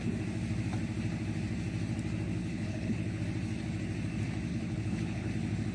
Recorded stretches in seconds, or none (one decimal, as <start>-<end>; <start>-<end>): 0.0-2.4; 3.2-4.5; 5.3-5.7